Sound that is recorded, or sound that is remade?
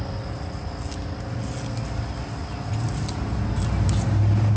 recorded